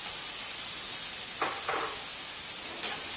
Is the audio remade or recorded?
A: recorded